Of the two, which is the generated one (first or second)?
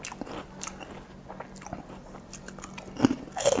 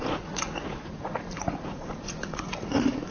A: second